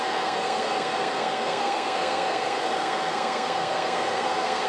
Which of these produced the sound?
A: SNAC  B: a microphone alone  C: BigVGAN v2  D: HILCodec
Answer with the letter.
A